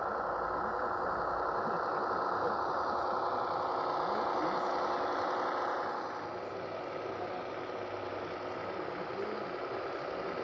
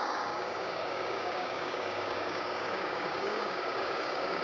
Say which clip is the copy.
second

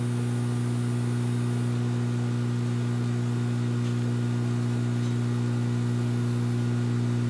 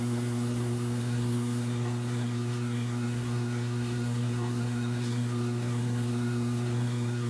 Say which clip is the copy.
second